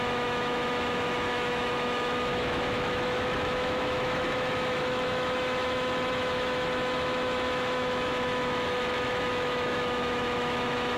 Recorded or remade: remade